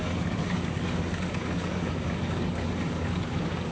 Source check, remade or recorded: remade